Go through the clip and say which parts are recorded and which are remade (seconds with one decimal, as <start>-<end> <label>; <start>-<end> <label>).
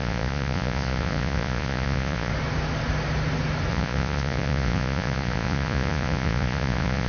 0.0-2.3 remade; 2.3-3.7 recorded; 3.7-7.1 remade